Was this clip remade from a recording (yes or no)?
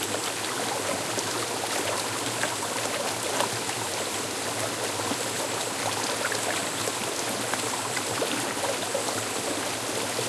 no